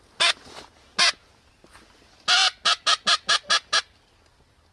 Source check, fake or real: real